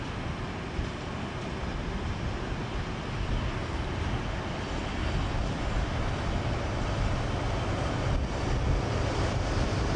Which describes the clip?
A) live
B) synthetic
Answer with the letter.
A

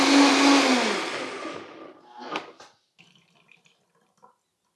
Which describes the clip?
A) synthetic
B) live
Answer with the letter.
B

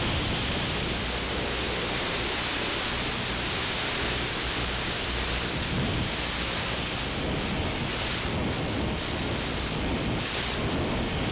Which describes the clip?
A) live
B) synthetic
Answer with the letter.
A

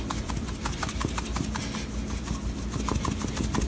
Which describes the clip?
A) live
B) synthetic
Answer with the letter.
A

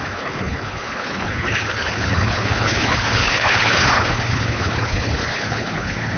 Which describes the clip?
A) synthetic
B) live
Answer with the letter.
A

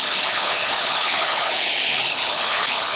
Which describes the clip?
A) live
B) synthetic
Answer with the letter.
B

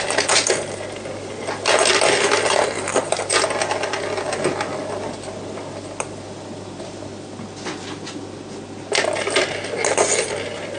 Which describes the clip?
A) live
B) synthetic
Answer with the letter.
A